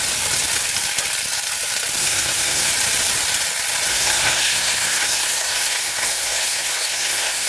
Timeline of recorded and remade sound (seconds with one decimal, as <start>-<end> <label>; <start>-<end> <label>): 0.0-2.0 recorded; 2.0-2.7 remade; 2.7-3.9 recorded; 3.9-7.5 remade